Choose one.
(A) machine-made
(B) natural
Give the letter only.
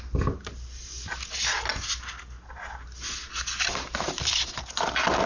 B